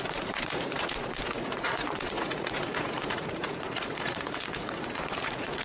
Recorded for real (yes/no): no